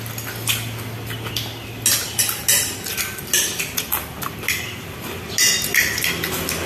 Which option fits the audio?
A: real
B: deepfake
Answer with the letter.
A